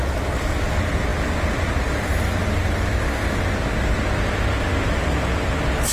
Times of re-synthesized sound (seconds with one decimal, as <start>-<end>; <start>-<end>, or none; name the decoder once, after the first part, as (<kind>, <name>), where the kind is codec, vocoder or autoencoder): none